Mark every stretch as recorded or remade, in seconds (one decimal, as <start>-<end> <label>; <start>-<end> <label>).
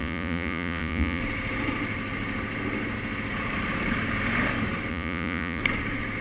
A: 0.0-1.2 remade; 1.2-4.9 recorded; 4.9-5.6 remade; 5.6-6.2 recorded